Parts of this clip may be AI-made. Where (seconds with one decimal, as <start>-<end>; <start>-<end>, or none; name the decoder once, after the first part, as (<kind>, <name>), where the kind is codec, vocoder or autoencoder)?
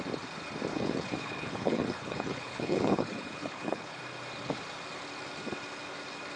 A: 0.7-4.0 (codec, HILCodec)